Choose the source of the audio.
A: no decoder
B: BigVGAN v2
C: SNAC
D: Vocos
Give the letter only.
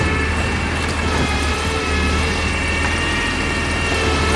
A